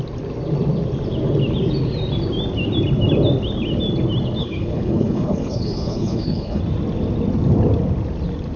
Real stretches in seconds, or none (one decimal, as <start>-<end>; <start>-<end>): 0.0-4.4; 6.6-8.6